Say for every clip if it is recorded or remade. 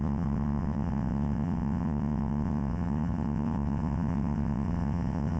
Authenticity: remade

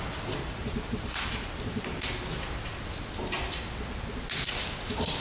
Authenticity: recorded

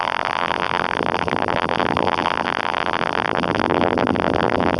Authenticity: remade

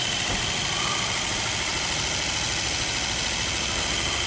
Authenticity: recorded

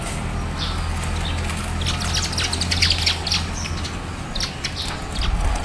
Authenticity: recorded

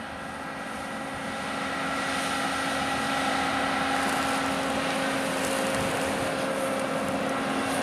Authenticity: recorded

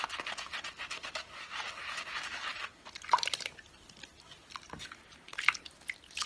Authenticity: recorded